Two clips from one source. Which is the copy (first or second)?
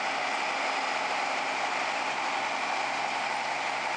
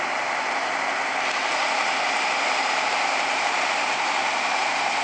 second